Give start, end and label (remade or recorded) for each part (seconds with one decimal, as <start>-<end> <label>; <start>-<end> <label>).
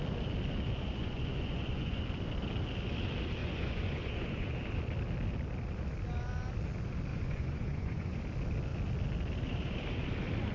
0.0-1.0 recorded; 1.0-2.0 remade; 2.0-3.4 recorded; 3.4-4.5 remade; 4.5-7.1 recorded; 7.1-8.2 remade; 8.2-10.5 recorded